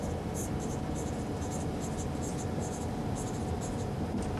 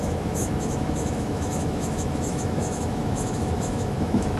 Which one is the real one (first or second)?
first